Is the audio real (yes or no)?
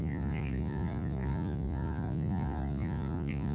no